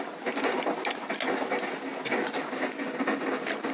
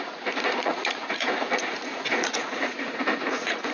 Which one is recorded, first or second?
first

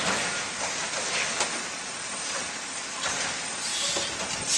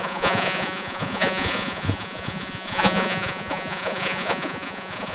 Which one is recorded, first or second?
first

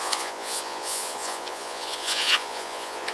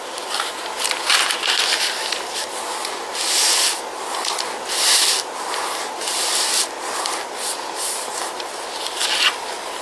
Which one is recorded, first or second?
second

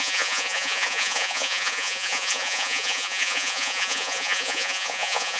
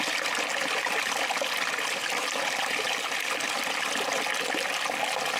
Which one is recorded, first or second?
second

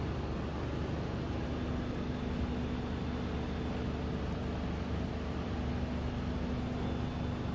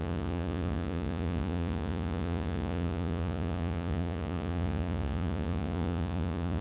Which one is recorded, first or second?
first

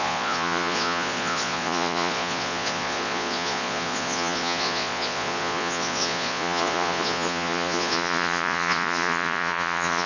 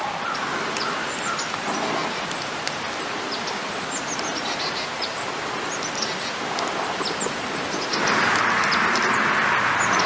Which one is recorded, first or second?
second